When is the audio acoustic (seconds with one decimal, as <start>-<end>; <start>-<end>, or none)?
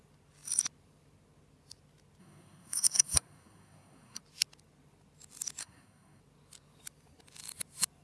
0.0-2.2; 4.2-5.6; 6.2-8.0